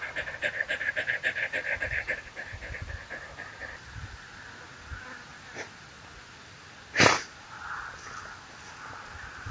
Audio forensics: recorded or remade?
recorded